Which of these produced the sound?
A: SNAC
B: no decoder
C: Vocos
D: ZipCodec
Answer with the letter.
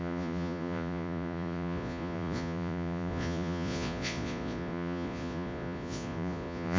C